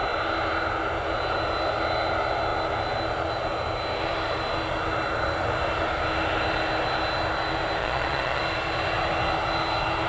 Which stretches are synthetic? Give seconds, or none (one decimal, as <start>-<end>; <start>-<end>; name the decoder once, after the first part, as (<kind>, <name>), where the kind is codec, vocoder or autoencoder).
7.8-8.4 (vocoder, Vocos)